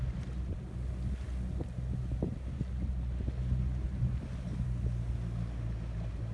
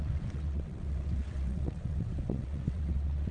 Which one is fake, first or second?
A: second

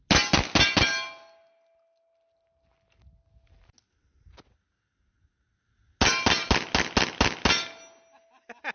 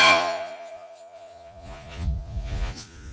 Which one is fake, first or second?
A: second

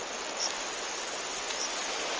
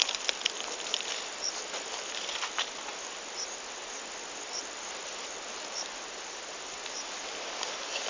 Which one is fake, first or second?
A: second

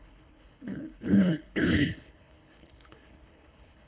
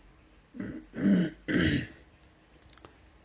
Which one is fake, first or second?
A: first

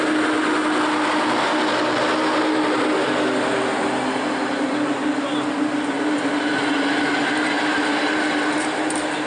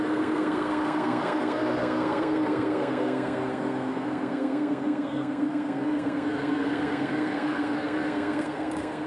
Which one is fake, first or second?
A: second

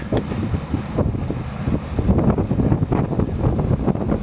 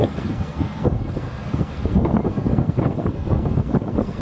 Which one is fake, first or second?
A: second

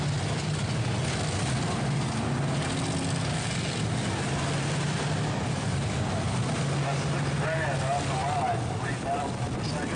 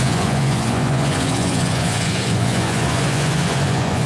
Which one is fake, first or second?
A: second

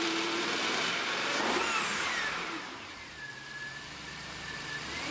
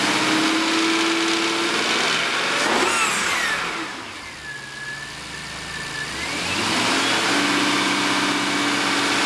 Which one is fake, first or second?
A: first